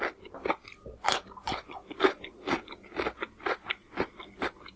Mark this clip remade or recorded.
recorded